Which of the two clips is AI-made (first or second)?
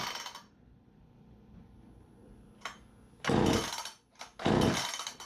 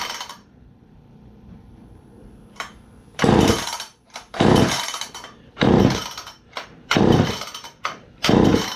second